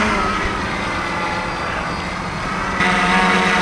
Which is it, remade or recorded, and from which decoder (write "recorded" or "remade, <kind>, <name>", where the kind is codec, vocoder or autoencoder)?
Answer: recorded